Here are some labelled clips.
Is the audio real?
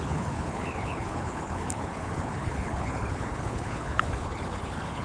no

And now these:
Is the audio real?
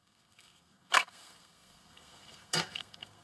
no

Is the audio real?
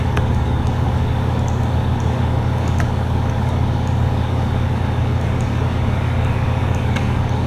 no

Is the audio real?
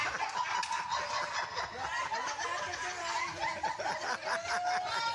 yes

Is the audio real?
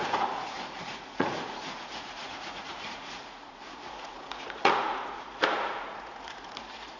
no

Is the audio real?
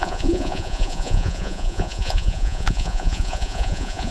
no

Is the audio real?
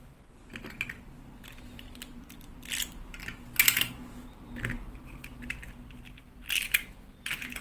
yes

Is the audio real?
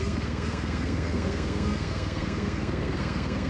no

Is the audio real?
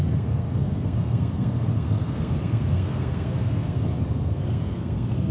no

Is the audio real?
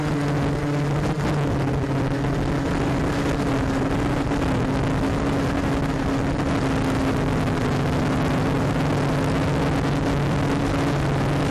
yes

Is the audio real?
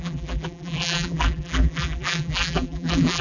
no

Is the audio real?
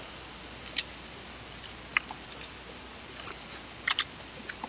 yes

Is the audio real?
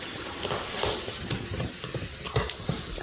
yes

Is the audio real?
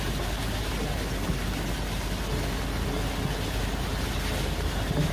yes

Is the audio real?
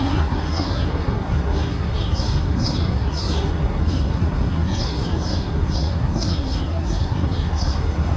no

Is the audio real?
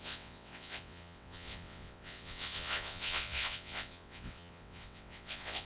no